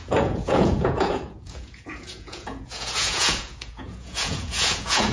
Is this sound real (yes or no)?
no